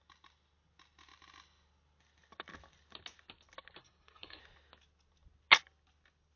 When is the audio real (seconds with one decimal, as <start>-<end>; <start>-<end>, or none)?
0.0-3.8; 4.4-6.4